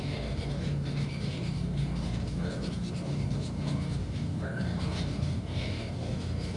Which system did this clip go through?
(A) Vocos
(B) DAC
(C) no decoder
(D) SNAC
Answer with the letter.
B